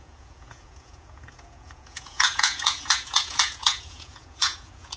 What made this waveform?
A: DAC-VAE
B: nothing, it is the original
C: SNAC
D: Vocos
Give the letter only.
D